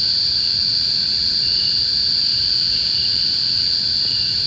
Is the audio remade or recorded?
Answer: remade